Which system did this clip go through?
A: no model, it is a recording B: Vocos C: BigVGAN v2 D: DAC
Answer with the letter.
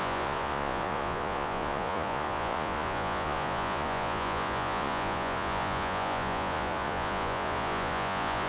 B